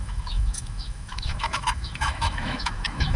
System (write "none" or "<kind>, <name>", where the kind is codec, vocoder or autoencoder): autoencoder, DAC-VAE